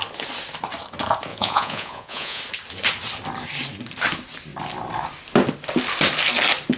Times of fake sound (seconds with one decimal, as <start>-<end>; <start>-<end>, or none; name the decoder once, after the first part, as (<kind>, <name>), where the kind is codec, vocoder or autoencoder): 1.3-2.4 (vocoder, Vocos)